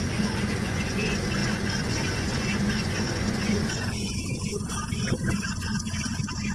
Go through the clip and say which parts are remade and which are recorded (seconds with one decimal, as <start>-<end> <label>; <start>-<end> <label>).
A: 0.0-6.5 remade